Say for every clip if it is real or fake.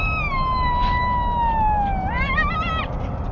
real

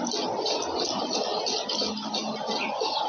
real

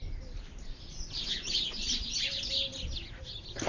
real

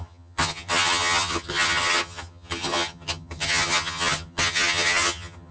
fake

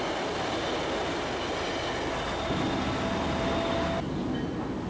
real